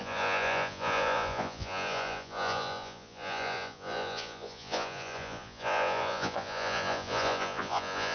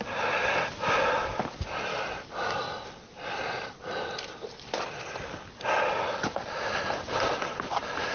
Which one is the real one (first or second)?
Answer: second